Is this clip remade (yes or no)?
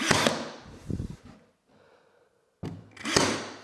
no